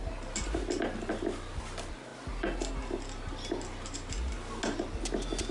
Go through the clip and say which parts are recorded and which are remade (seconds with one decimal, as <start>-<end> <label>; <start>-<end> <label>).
0.0-5.5 recorded